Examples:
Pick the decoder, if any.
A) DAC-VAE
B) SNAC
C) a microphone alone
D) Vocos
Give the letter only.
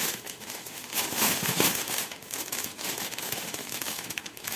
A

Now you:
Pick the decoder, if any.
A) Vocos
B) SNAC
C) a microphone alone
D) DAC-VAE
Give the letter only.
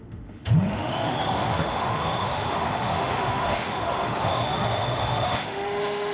D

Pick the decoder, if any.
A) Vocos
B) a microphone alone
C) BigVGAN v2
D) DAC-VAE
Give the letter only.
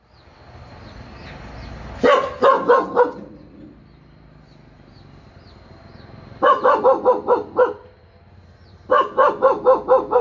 B